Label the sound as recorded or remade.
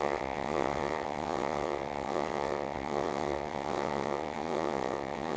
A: remade